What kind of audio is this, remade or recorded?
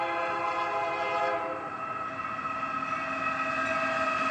recorded